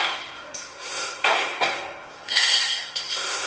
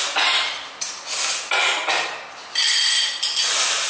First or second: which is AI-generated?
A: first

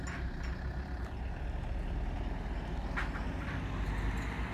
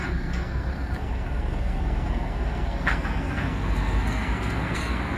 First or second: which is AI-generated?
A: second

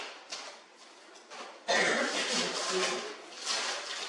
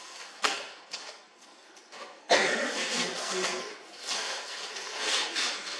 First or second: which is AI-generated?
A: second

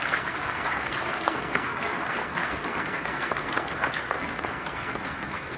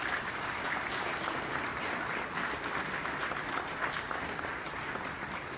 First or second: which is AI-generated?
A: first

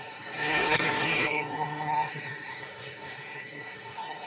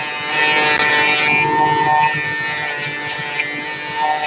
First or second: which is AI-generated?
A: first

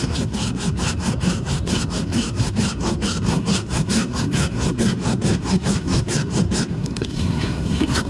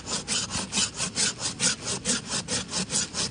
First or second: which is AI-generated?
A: first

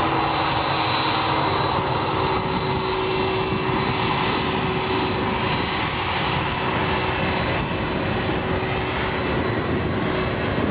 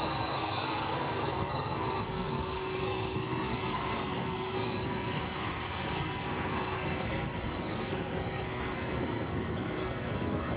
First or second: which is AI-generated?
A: second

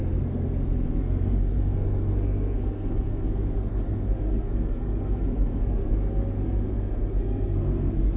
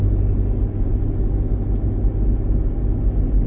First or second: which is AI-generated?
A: first